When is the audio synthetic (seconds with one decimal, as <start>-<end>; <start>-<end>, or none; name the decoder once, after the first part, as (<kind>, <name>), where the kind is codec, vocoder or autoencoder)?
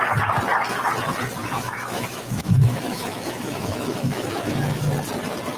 1.4-4.8 (autoencoder, DAC-VAE)